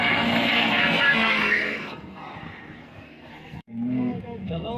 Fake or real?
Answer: fake